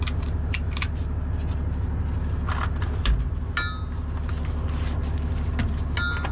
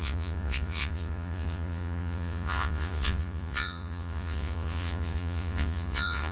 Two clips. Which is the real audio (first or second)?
first